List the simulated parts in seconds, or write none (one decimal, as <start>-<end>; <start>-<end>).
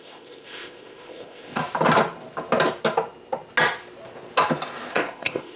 0.0-1.6; 4.9-5.6